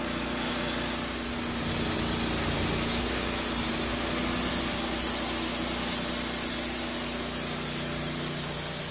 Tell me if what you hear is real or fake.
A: real